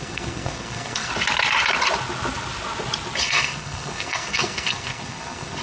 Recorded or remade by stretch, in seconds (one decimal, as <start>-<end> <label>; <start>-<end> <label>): 0.0-1.1 remade; 1.1-3.2 recorded; 3.2-5.6 remade